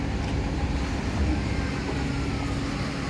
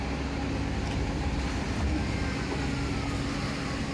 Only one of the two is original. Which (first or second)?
second